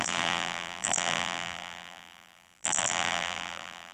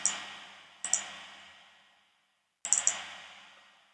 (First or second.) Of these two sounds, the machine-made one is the first